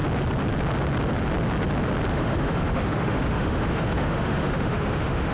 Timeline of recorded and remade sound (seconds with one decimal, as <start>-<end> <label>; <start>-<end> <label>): 0.0-2.1 recorded; 2.1-5.3 remade